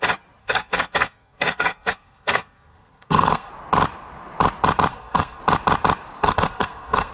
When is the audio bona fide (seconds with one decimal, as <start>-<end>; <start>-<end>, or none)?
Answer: 0.0-0.4; 3.5-4.9; 5.4-6.2